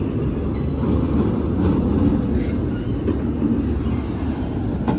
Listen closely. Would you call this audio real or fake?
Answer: real